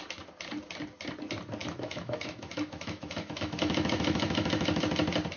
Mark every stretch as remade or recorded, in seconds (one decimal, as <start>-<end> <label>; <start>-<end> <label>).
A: 0.0-1.6 recorded; 1.6-4.8 remade; 4.8-5.4 recorded